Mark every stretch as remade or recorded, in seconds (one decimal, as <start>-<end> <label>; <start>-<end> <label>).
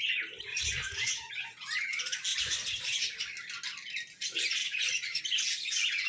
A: 0.0-0.5 recorded; 0.5-1.3 remade; 1.3-2.3 recorded; 2.3-3.0 remade; 3.0-4.6 recorded; 4.6-5.2 remade; 5.2-6.1 recorded